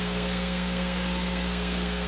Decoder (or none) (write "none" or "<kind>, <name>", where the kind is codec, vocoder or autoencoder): codec, SNAC